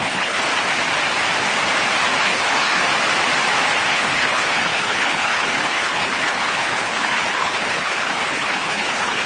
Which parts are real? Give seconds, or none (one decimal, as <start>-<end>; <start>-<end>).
0.5-2.2; 2.8-3.9